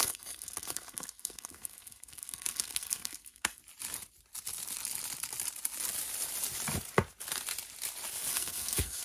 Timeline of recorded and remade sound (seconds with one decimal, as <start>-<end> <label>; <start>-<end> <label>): 0.0-3.6 remade; 3.6-8.3 recorded; 8.3-9.0 remade